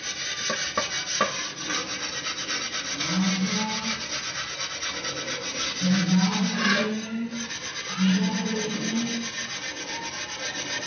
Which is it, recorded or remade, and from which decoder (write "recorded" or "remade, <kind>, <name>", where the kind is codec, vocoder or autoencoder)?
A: recorded